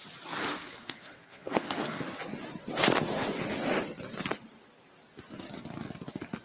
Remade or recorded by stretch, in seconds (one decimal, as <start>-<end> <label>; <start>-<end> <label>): 0.0-0.5 recorded; 0.5-2.0 remade; 2.0-6.4 recorded

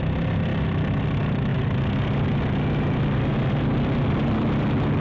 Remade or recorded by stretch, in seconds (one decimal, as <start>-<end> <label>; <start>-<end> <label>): 0.0-5.0 recorded